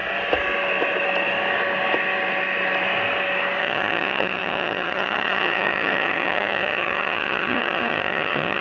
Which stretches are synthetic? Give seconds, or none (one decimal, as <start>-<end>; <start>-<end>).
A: 3.6-8.6